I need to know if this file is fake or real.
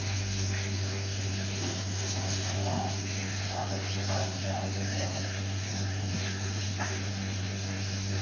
fake